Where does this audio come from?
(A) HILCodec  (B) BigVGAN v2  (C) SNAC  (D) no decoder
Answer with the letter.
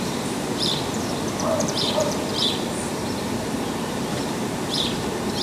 B